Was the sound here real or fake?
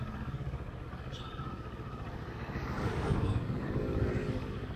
fake